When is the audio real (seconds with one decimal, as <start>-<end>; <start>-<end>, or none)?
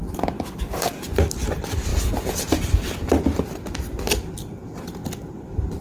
0.0-0.6; 1.9-5.3